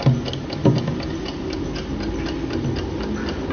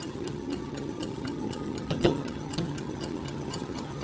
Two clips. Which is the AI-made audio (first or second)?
second